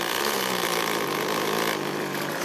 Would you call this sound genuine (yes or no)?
yes